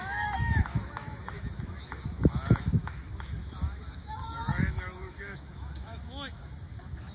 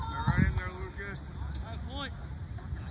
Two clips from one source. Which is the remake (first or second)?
first